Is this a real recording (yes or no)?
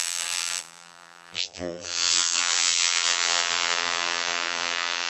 no